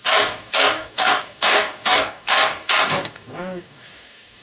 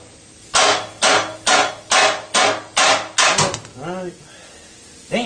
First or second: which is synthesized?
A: first